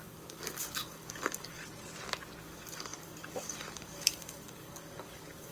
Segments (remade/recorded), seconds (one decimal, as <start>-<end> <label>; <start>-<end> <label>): 0.0-1.6 remade; 1.6-2.4 recorded; 2.4-5.5 remade